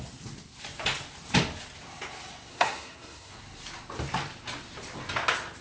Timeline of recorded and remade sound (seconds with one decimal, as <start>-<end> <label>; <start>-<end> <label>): 0.0-2.5 recorded; 2.5-3.3 remade; 3.3-5.6 recorded